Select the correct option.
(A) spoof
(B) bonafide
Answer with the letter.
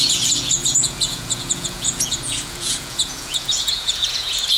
A